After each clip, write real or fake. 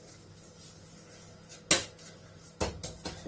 real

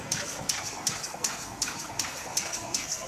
fake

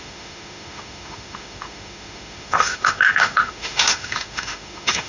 fake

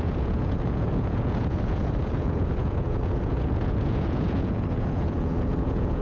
fake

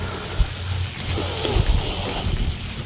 real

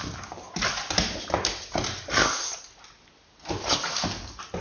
real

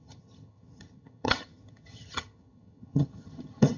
fake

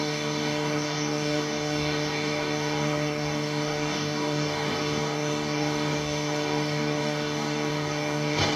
fake